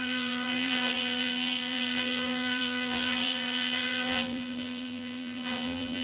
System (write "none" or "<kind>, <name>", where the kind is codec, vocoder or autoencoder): vocoder, BigVGAN v2